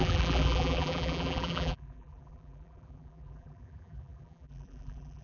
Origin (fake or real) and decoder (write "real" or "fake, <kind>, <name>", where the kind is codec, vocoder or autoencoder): fake, vocoder, BigVGAN v2